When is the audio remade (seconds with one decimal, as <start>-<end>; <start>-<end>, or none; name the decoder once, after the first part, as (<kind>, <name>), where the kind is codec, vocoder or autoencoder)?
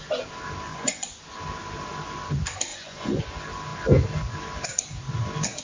0.7-1.2 (vocoder, Vocos); 2.7-3.2